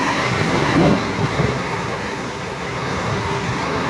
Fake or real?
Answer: fake